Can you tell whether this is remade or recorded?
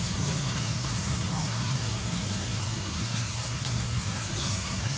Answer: remade